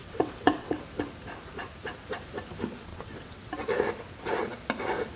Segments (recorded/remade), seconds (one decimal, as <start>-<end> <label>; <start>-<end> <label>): 0.0-0.8 remade; 0.8-2.9 recorded; 2.9-3.5 remade; 3.5-5.2 recorded